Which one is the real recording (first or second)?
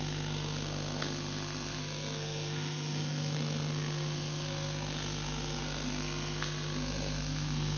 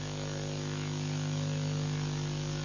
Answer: second